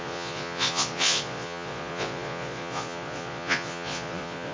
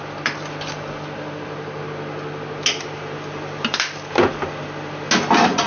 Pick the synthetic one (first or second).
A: first